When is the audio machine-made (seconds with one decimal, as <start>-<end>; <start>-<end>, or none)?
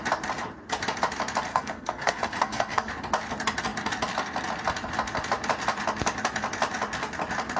1.5-2.9